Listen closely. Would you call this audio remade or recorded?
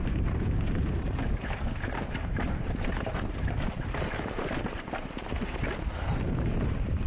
remade